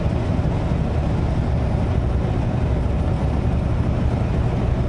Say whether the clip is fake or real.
real